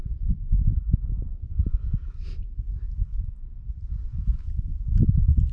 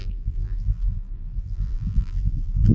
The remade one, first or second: second